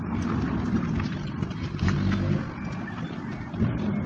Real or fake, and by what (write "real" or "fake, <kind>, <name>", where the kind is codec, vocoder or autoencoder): real